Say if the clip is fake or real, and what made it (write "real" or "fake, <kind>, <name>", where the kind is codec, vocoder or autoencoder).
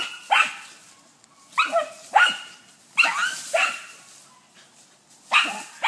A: real